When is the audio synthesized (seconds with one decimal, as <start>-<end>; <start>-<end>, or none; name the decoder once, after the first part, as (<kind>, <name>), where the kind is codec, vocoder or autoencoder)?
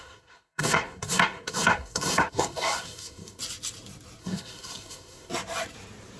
0.0-3.4 (codec, SNAC); 4.2-5.3